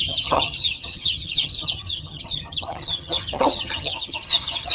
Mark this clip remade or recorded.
remade